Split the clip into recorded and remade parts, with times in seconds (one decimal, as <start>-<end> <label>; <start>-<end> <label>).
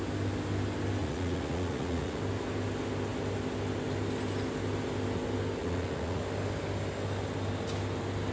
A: 0.0-1.0 recorded; 1.0-2.2 remade; 2.2-5.6 recorded; 5.6-6.2 remade; 6.2-8.3 recorded